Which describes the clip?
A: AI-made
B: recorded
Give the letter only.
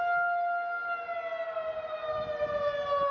B